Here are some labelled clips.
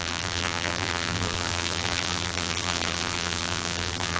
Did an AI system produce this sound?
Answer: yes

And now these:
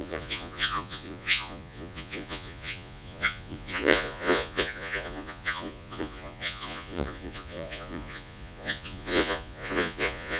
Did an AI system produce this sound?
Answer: yes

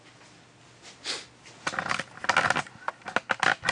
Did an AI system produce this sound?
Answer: no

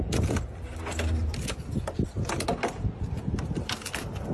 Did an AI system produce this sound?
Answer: no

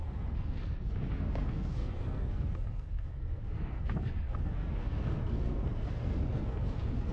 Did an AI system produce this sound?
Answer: yes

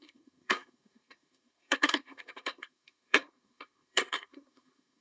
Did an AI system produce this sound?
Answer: yes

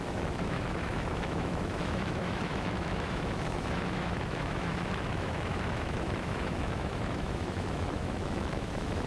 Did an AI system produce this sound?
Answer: yes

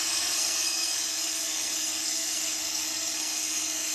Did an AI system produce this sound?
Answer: yes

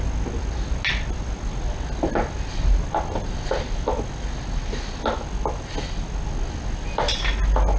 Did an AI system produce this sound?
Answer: no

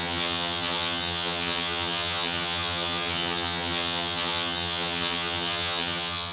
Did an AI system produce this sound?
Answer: yes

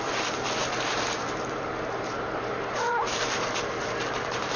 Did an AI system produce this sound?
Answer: yes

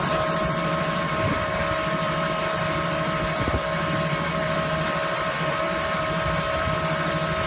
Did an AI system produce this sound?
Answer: yes